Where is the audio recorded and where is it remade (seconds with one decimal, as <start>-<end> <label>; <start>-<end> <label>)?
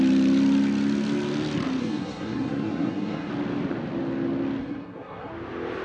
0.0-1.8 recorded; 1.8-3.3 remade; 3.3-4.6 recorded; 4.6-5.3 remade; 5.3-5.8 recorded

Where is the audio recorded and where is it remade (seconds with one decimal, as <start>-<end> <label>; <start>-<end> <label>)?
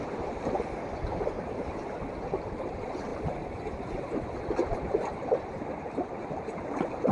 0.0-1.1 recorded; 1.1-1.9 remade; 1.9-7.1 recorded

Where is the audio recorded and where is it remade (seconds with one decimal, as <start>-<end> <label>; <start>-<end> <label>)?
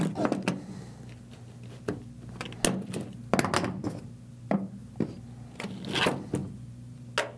0.0-6.4 recorded; 6.4-7.0 remade; 7.0-7.4 recorded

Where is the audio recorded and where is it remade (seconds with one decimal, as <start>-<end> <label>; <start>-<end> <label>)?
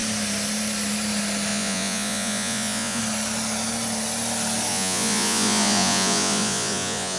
0.0-1.5 recorded; 1.5-3.0 remade; 3.0-4.7 recorded; 4.7-7.2 remade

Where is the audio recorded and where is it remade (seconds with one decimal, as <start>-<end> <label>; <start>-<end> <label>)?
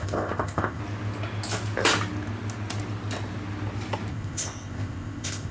0.0-0.8 remade; 0.8-4.1 recorded; 4.1-5.5 remade